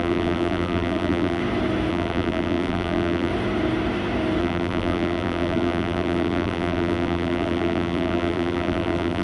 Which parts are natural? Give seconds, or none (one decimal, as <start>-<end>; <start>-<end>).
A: 1.4-1.9; 3.3-4.4